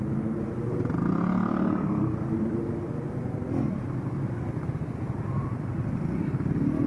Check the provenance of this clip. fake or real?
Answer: real